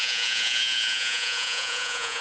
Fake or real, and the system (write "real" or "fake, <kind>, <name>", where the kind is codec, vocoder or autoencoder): fake, vocoder, Vocos